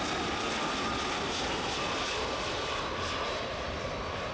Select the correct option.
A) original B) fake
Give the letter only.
B